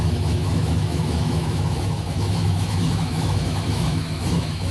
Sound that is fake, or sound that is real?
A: fake